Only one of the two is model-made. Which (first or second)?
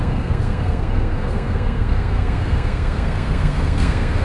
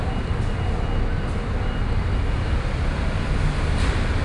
first